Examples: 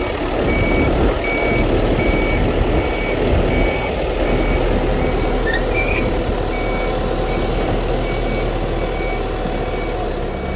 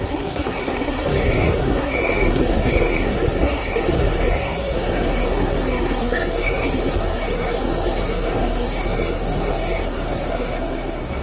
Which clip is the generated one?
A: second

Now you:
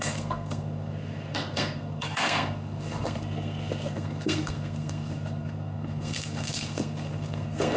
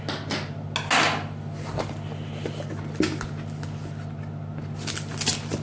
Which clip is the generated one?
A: first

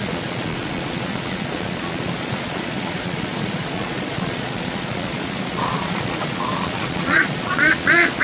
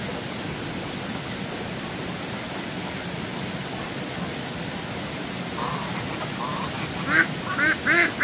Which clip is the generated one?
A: first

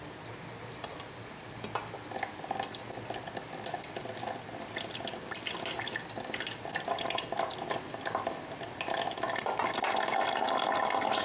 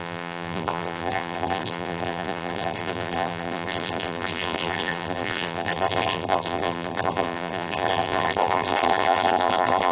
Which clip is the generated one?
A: second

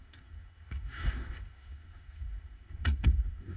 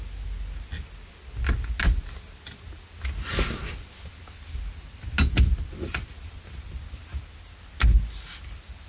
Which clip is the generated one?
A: first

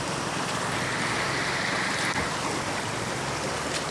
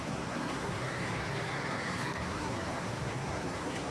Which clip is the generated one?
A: second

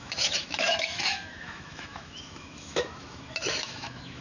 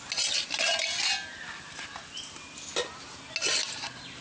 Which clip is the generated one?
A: first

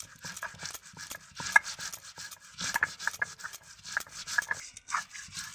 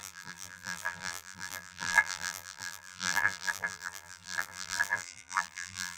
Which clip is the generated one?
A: second